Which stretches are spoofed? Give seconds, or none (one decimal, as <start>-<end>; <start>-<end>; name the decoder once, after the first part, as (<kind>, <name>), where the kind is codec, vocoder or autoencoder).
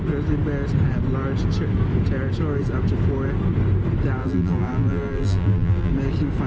4.2-5.9 (vocoder, BigVGAN v2)